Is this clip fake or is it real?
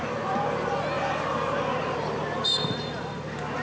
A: real